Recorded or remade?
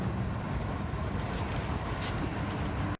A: recorded